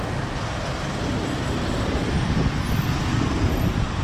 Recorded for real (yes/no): yes